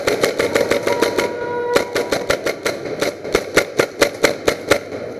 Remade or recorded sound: recorded